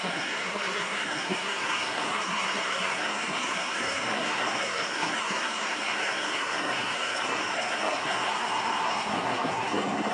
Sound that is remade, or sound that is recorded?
remade